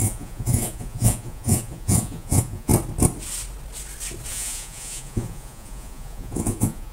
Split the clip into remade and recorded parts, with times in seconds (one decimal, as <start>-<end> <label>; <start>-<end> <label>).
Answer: 0.0-2.7 remade; 2.7-4.3 recorded; 4.3-6.9 remade